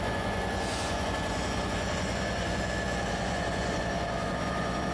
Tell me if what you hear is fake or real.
fake